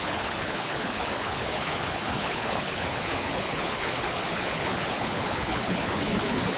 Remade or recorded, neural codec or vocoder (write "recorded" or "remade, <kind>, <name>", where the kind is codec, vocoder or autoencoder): remade, codec, HILCodec